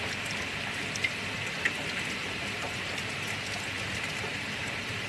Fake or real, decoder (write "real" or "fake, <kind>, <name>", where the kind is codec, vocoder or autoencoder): real